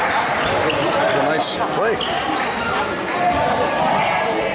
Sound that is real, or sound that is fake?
real